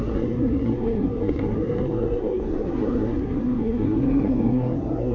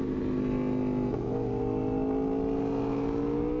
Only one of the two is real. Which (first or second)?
second